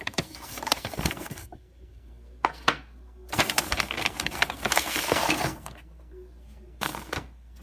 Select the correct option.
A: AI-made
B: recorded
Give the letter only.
A